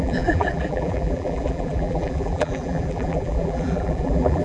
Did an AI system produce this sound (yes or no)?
yes